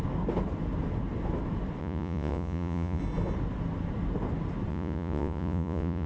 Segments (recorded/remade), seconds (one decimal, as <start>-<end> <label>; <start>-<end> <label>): 0.0-1.8 recorded; 1.8-3.0 remade; 3.0-4.7 recorded; 4.7-6.1 remade